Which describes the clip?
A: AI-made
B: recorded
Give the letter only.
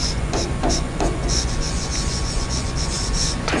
A